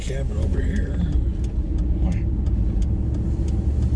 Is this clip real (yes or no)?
yes